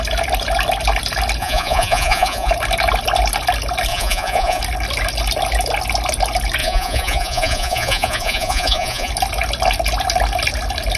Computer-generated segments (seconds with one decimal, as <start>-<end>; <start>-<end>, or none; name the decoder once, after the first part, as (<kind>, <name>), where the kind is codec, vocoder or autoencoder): 1.4-2.5 (vocoder, Vocos); 3.9-4.6; 6.6-9.1